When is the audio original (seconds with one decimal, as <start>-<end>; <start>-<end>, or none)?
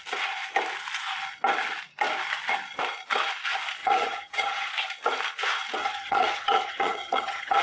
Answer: 0.0-3.8; 4.7-5.8